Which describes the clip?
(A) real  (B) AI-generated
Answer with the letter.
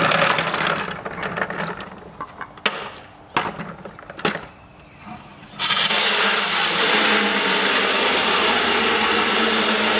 A